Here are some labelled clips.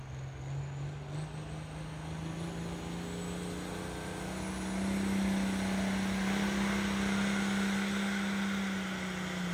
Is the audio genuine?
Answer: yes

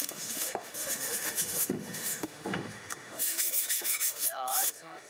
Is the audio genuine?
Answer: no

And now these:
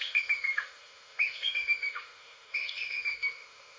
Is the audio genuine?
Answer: no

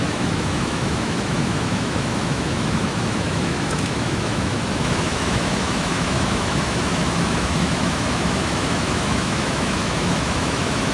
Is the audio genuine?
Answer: no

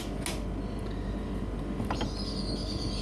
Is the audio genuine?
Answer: yes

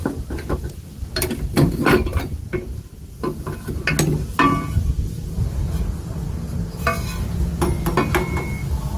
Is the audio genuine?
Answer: yes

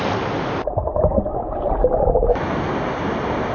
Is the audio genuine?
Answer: yes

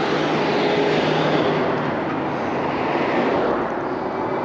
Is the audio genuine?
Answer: yes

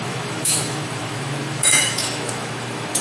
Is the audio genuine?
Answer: no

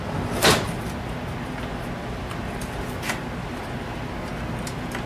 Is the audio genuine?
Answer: yes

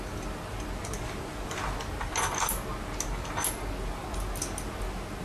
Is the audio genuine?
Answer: yes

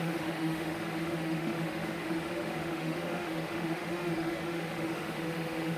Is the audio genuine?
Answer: no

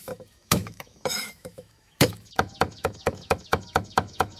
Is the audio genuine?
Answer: no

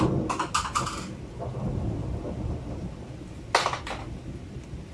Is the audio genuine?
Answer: yes